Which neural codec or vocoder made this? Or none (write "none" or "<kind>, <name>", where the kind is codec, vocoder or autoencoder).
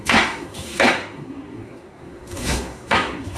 codec, SNAC